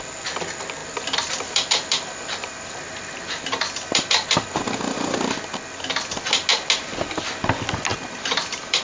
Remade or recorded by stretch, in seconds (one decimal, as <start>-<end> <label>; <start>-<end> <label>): 0.0-0.8 recorded; 0.8-5.5 remade; 5.5-7.9 recorded; 7.9-8.8 remade